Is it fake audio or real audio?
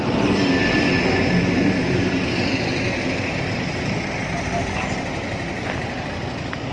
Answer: real